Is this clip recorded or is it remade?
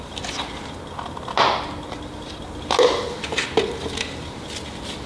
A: recorded